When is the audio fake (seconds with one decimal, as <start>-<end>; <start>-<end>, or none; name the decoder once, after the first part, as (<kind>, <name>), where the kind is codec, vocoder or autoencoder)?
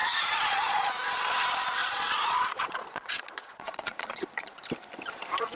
0.0-0.9 (vocoder, Vocos); 1.8-4.6